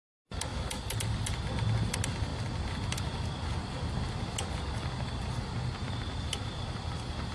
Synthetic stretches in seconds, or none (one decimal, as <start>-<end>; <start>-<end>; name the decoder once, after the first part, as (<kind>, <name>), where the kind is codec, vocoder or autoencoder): 0.5-1.3 (vocoder, BigVGAN v2)